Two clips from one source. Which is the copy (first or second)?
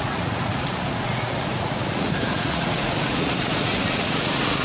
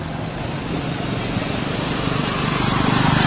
first